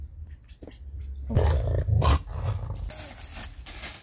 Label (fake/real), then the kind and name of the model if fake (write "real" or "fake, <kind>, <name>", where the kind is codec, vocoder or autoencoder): real